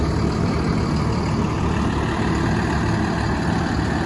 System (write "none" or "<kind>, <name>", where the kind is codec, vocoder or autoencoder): none